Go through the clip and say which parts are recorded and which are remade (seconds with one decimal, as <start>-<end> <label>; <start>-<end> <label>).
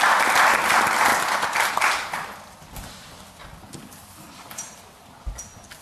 0.0-5.8 recorded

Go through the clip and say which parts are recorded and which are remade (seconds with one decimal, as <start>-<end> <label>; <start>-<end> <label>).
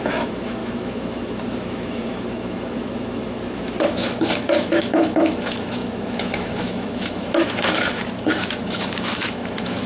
0.0-9.9 remade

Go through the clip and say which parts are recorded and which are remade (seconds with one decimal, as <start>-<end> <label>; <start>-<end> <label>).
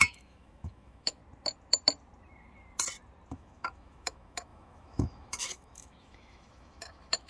0.0-1.2 remade; 1.2-3.3 recorded; 3.3-7.3 remade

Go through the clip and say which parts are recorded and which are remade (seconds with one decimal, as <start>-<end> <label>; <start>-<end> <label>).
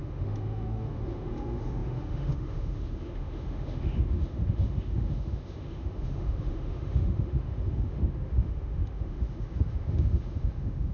0.0-10.9 remade